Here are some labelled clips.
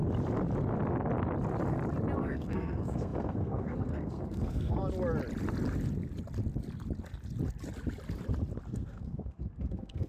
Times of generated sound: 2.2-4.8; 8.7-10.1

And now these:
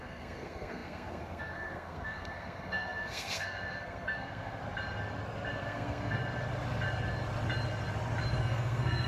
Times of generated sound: 0.0-4.6; 5.6-6.2; 8.4-9.1

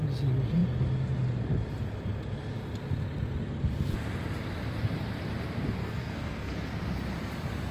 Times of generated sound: 5.8-6.5

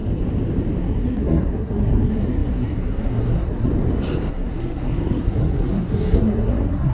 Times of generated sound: 0.8-3.7; 4.3-6.9

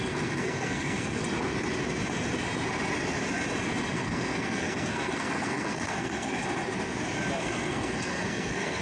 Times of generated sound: 0.0-1.2; 3.9-6.4; 7.4-8.8

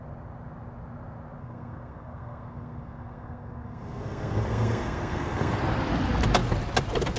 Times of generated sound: 1.4-5.6